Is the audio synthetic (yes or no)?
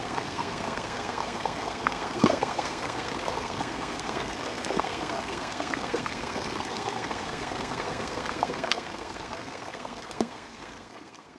yes